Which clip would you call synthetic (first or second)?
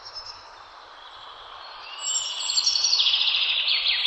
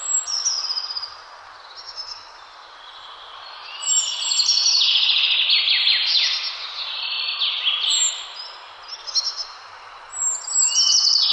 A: first